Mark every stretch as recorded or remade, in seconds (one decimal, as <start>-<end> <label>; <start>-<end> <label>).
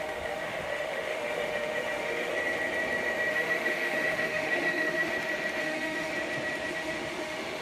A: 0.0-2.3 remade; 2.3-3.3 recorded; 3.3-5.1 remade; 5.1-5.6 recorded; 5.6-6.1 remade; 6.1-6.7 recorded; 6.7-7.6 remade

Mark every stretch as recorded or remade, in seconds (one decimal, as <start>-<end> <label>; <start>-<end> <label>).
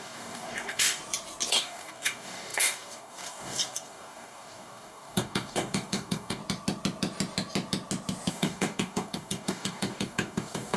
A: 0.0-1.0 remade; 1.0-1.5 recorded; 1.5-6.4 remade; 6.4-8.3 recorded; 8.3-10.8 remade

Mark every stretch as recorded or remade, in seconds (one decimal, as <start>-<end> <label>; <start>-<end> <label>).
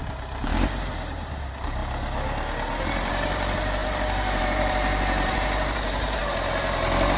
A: 0.0-1.8 remade; 1.8-2.8 recorded; 2.8-7.2 remade